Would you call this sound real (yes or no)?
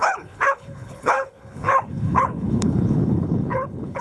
no